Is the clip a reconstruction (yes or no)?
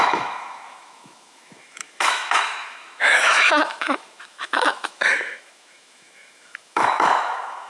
yes